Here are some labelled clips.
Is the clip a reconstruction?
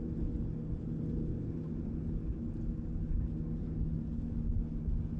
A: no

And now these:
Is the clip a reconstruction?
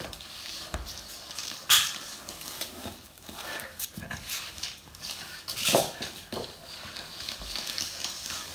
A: yes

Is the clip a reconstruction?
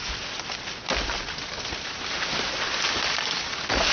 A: no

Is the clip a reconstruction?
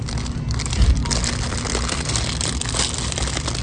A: no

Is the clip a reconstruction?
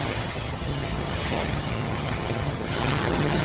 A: yes